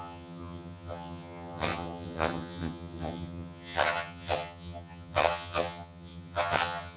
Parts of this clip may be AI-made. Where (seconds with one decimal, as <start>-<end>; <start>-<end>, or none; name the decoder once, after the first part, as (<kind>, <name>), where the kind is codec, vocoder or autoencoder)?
0.0-7.0 (vocoder, HiFi-GAN)